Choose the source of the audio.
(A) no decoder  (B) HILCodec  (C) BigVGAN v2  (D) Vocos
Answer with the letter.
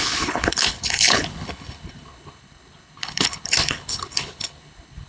B